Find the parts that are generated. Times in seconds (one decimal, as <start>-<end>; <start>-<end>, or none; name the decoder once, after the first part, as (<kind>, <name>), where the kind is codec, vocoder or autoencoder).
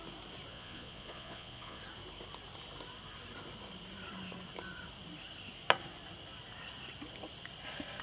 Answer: 0.5-1.8 (vocoder, Vocos)